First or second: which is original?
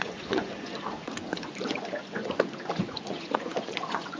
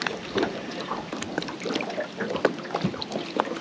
second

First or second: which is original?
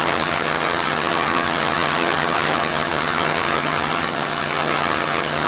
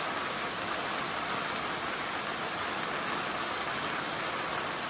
second